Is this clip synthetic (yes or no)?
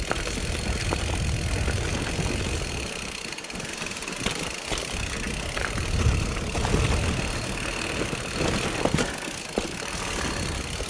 no